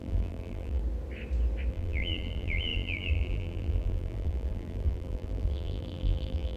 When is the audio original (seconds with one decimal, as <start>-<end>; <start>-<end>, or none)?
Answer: 0.8-1.7